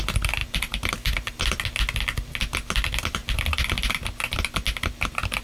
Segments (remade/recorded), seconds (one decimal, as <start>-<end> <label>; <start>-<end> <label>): 0.0-0.4 recorded; 0.4-0.9 remade; 0.9-3.2 recorded; 3.2-3.9 remade; 3.9-5.4 recorded